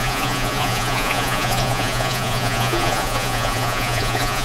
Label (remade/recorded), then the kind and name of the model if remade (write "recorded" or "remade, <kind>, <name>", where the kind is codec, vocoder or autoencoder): remade, vocoder, Vocos